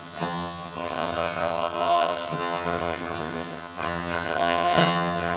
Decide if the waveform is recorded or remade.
remade